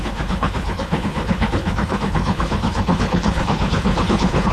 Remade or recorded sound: remade